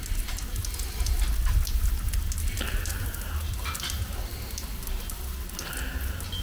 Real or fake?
real